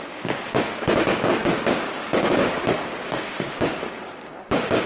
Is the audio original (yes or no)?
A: no